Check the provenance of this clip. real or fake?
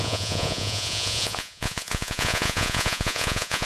fake